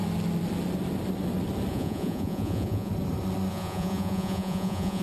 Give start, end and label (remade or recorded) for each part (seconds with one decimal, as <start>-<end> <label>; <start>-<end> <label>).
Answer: 0.0-1.7 recorded; 1.7-2.9 remade; 2.9-3.5 recorded; 3.5-5.0 remade